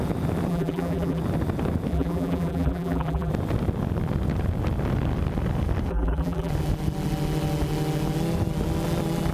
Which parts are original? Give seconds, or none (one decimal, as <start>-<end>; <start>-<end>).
0.0-0.5; 1.2-1.9; 3.3-5.9; 6.5-9.3